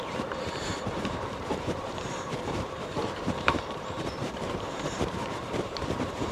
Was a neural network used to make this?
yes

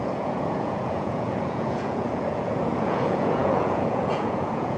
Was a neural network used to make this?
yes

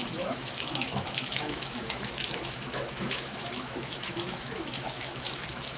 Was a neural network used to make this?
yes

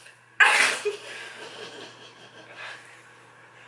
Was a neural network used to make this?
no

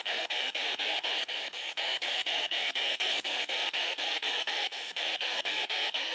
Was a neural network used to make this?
yes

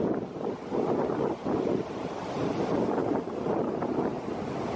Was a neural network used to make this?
no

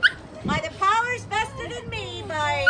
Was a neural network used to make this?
no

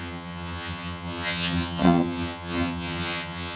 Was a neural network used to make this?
yes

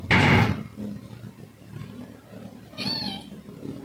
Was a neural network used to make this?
no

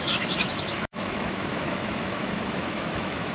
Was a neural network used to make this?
yes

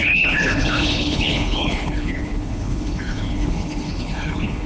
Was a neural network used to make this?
yes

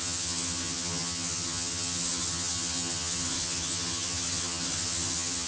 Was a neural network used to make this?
yes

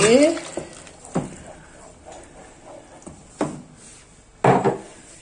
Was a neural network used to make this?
no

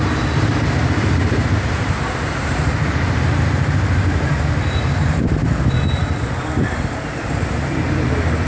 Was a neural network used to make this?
yes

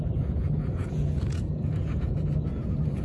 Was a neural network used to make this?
yes